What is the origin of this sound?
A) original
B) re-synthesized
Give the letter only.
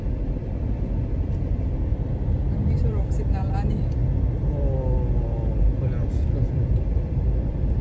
B